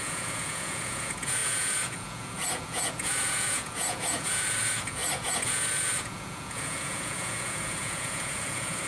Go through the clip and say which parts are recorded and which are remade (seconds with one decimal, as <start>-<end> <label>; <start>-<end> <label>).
0.0-8.9 remade